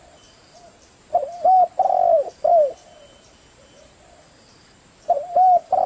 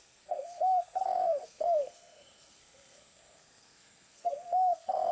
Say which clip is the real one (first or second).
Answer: first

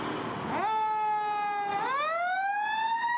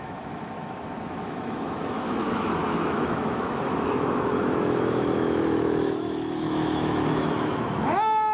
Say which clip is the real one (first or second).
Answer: first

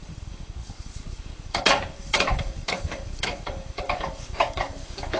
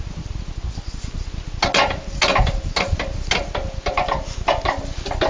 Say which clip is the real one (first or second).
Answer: second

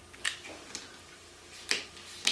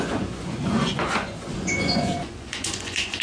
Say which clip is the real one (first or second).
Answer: first